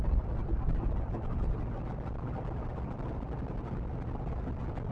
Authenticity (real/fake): fake